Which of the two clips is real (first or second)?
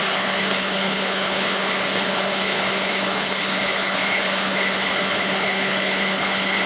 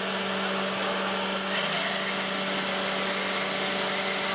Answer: second